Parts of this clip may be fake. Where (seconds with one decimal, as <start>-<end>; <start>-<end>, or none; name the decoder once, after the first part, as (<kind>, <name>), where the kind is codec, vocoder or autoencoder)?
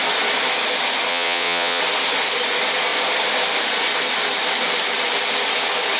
1.1-1.8 (vocoder, WaveNeXt)